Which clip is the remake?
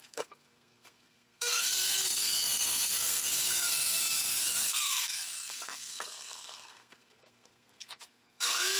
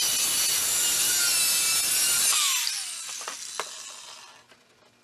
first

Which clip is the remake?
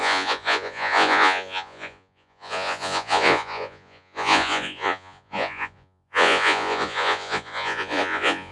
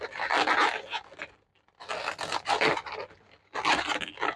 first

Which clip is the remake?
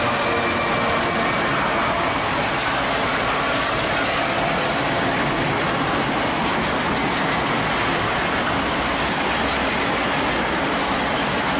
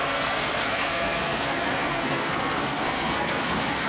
second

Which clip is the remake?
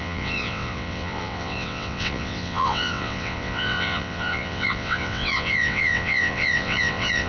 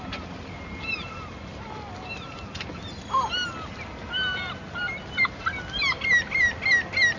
first